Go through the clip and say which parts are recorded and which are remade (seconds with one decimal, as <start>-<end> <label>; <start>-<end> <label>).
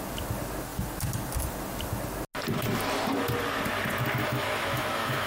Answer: 0.0-4.2 recorded; 4.2-5.3 remade